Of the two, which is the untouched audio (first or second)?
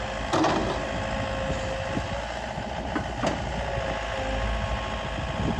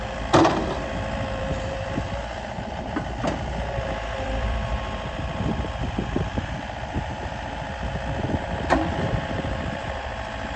first